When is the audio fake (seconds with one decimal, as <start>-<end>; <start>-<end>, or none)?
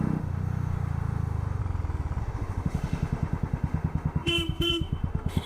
0.0-1.6; 2.2-5.5